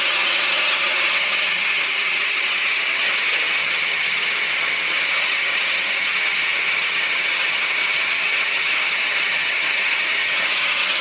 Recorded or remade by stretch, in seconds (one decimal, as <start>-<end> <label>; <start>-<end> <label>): 0.0-11.0 remade